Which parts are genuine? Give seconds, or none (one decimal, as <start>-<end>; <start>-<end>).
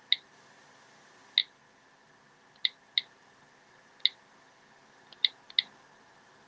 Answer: 0.0-6.5